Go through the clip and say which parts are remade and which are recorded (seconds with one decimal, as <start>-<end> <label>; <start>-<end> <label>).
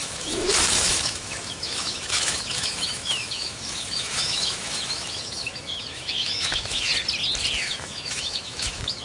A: 0.0-6.9 remade; 6.9-7.6 recorded; 7.6-9.0 remade